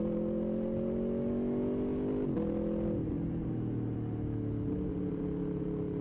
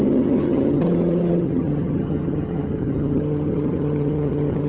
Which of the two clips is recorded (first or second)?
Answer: first